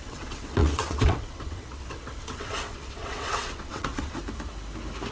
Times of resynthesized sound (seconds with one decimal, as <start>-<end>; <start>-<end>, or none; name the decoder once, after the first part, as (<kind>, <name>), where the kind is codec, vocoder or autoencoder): 0.0-4.2 (vocoder, WaveNeXt)